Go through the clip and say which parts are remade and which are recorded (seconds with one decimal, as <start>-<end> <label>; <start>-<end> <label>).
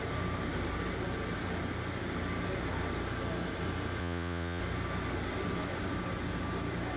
0.0-4.0 recorded; 4.0-4.6 remade; 4.6-7.0 recorded